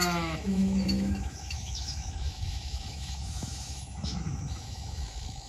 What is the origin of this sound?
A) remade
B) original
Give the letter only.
A